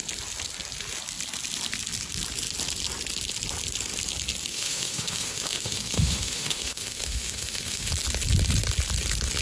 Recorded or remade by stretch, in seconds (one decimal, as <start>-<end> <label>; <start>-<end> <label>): 0.0-4.5 recorded; 4.5-7.9 remade; 7.9-9.4 recorded